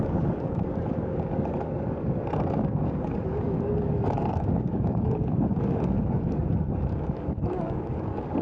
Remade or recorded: remade